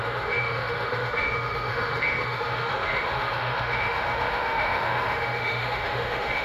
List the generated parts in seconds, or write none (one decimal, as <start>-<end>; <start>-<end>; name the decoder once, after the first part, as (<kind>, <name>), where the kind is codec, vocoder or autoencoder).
0.0-6.4 (autoencoder, DAC-VAE)